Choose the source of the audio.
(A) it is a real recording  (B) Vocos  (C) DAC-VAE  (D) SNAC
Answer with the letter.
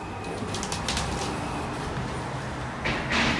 A